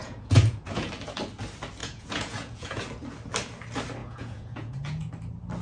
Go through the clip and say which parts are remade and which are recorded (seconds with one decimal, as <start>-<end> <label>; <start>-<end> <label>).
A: 0.0-0.9 remade; 0.9-1.8 recorded; 1.8-2.8 remade; 2.8-4.0 recorded; 4.0-5.1 remade; 5.1-5.6 recorded